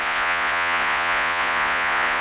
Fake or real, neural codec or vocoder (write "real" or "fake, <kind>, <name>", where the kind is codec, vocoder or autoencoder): fake, vocoder, Vocos